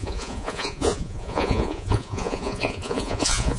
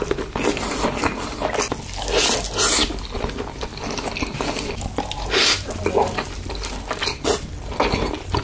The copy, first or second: first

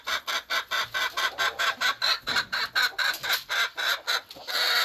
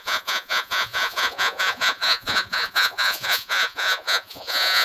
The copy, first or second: second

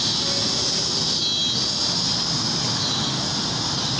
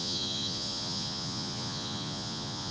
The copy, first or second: second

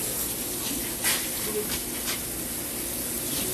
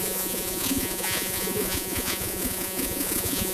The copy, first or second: second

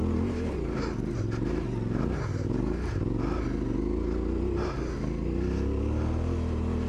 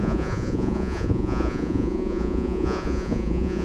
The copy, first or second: second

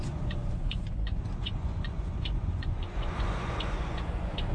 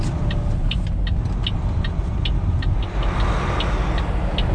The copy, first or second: first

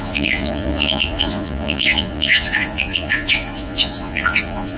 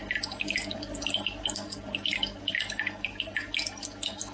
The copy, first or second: first